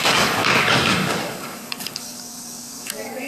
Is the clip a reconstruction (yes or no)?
yes